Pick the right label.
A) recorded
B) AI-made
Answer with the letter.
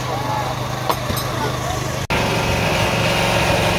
A